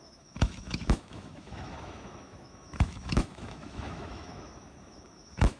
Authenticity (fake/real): fake